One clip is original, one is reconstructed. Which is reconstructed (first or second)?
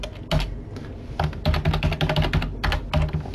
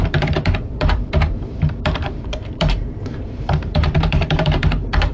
second